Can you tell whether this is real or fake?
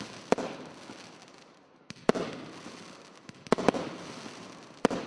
real